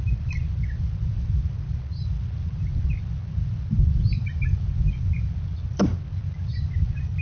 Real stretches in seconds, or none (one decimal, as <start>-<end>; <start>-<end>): 0.0-7.2